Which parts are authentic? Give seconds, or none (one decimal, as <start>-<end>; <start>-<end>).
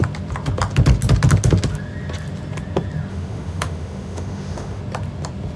0.0-3.1; 4.8-5.6